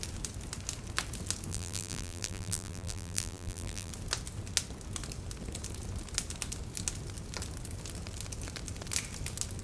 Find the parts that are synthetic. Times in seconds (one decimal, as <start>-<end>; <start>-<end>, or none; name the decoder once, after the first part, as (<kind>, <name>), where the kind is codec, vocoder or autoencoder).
1.5-3.9 (vocoder, BigVGAN v2)